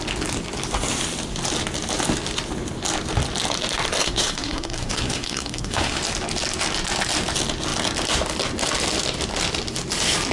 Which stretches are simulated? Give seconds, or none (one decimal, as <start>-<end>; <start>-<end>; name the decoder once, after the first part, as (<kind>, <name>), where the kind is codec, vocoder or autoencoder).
4.0-6.0 (codec, SNAC)